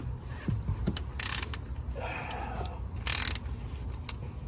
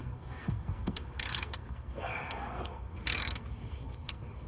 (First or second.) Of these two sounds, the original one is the first